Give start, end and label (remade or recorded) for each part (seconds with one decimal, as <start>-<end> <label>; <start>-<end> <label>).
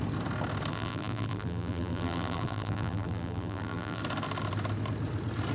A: 0.0-0.7 recorded; 0.7-4.0 remade; 4.0-5.5 recorded